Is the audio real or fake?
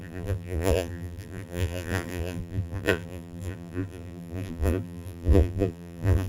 fake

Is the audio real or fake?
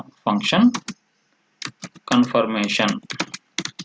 real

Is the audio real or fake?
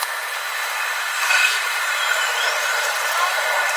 fake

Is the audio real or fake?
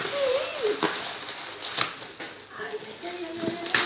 real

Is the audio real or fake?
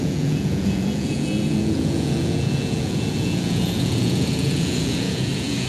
fake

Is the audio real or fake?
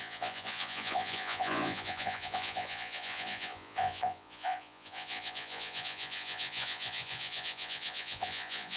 fake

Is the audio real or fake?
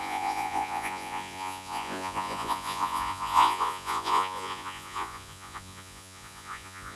fake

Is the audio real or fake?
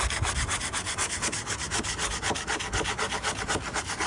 real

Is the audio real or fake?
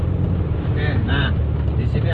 fake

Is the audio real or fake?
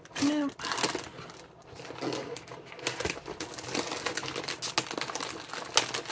real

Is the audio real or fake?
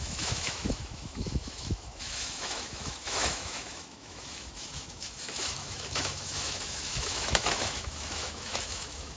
fake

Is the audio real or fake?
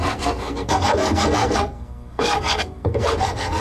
fake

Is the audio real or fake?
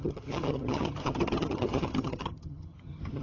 fake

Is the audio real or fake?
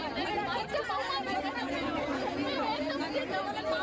real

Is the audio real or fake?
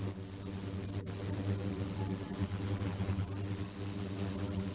real